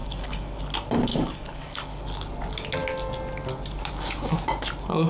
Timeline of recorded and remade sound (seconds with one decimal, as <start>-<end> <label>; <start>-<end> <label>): 0.0-0.6 remade; 0.6-1.1 recorded; 1.1-2.0 remade; 2.0-5.1 recorded